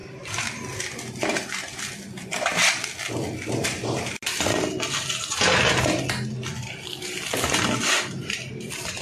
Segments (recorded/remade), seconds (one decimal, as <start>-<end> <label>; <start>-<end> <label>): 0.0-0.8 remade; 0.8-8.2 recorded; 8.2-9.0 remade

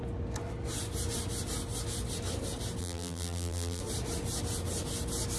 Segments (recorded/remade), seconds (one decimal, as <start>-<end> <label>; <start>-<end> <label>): 0.0-2.8 recorded; 2.8-3.8 remade; 3.8-5.4 recorded

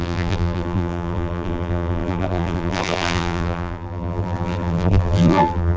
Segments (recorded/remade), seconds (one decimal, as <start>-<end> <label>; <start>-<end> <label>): 0.0-5.8 remade

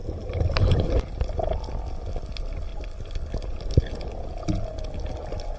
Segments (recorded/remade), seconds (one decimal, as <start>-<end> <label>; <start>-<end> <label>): 0.0-1.5 remade; 1.5-2.7 recorded; 2.7-3.7 remade; 3.7-5.6 recorded

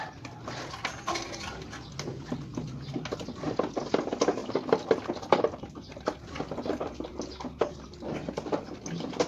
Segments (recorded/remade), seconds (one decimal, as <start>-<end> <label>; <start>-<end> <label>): 0.0-4.4 recorded; 4.4-5.7 remade; 5.7-7.1 recorded; 7.1-7.7 remade; 7.7-9.3 recorded

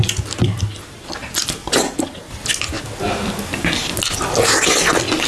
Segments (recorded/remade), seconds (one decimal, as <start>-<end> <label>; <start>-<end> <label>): 0.0-5.3 recorded

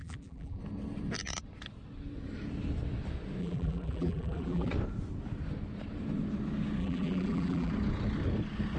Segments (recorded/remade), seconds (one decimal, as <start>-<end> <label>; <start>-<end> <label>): 0.0-0.6 remade; 0.6-3.4 recorded; 3.4-4.7 remade; 4.7-6.8 recorded; 6.8-7.7 remade; 7.7-8.8 recorded